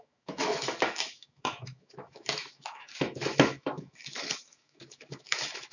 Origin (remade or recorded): remade